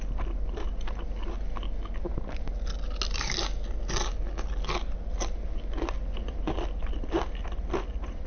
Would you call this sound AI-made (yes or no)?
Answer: no